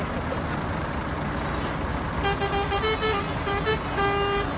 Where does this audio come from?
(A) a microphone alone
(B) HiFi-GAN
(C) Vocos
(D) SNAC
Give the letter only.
A